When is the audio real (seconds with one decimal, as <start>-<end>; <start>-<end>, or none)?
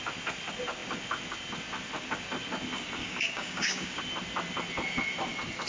0.0-3.0; 4.0-5.7